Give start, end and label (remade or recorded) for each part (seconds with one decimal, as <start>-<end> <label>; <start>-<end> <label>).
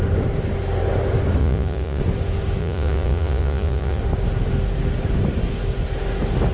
0.0-1.4 recorded; 1.4-2.0 remade; 2.0-2.6 recorded; 2.6-4.0 remade; 4.0-6.5 recorded